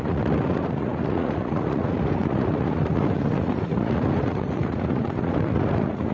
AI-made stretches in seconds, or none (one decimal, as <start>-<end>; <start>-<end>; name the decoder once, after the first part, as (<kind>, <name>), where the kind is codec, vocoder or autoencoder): 0.0-6.1 (vocoder, Vocos)

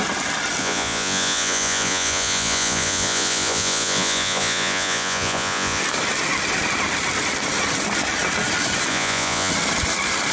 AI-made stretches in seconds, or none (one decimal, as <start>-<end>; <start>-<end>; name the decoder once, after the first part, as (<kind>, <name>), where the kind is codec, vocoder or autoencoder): 0.6-5.8 (vocoder, Vocos); 8.9-9.5

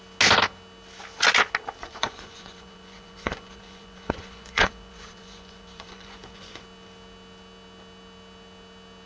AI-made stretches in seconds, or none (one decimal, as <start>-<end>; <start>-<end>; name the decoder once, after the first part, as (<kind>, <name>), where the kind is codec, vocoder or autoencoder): 1.8-6.6 (vocoder, Vocos)

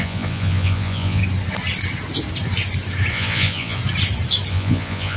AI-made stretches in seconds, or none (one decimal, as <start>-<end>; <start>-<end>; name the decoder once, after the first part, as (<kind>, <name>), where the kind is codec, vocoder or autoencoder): 0.0-1.2 (vocoder, Vocos); 3.1-3.8; 4.5-5.2

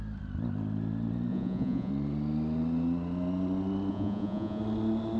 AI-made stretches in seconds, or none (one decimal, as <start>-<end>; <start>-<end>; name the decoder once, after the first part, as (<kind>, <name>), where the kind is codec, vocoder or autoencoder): 1.3-1.9 (vocoder, Vocos); 3.9-4.6